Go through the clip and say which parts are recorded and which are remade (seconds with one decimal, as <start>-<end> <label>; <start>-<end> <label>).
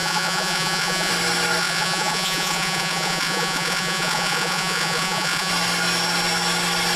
0.0-1.1 remade; 1.1-1.6 recorded; 1.6-5.5 remade; 5.5-7.0 recorded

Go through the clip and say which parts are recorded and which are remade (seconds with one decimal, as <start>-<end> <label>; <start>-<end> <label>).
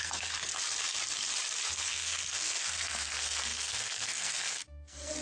0.0-0.5 remade; 0.5-1.7 recorded; 1.7-5.2 remade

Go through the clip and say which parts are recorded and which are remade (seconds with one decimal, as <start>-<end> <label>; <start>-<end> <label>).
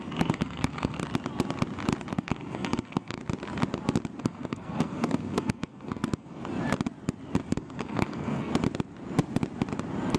0.0-1.0 remade; 1.0-2.1 recorded; 2.1-3.2 remade; 3.2-4.2 recorded; 4.2-6.4 remade; 6.4-7.5 recorded; 7.5-8.5 remade; 8.5-10.2 recorded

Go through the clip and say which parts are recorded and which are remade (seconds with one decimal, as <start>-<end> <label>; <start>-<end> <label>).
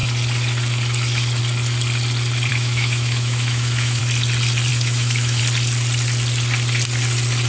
0.0-2.5 recorded; 2.5-4.0 remade; 4.0-4.7 recorded; 4.7-5.4 remade; 5.4-7.5 recorded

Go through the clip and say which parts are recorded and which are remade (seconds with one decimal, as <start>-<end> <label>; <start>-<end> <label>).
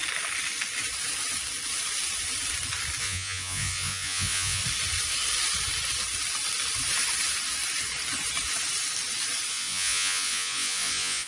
0.0-3.0 recorded; 3.0-4.6 remade; 4.6-9.5 recorded; 9.5-11.3 remade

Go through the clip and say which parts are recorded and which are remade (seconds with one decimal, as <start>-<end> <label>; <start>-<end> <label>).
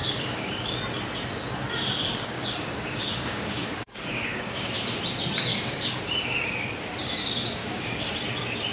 0.0-0.8 remade; 0.8-2.0 recorded; 2.0-4.7 remade; 4.7-5.5 recorded; 5.5-6.0 remade; 6.0-7.6 recorded; 7.6-8.1 remade; 8.1-8.7 recorded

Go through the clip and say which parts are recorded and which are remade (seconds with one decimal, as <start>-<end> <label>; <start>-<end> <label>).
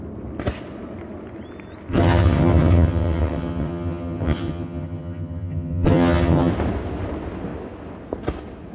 0.0-1.9 recorded; 1.9-6.5 remade; 6.5-8.7 recorded